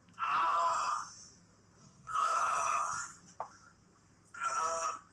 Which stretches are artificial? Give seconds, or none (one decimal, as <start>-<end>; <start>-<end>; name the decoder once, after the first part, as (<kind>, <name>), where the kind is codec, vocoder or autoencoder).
1.8-2.4 (codec, SNAC)